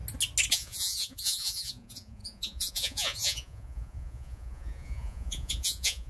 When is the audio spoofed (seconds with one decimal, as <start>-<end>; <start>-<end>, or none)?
0.5-6.1